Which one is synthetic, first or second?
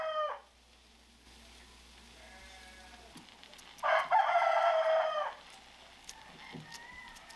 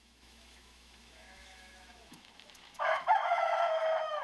second